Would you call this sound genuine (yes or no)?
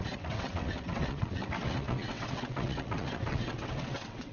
no